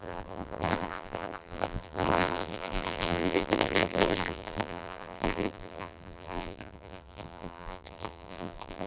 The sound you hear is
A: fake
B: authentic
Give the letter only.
A